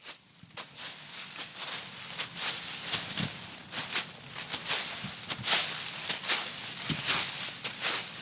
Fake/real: real